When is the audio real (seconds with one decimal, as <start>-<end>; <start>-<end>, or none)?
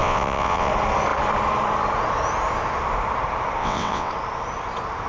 0.7-3.6; 4.1-5.1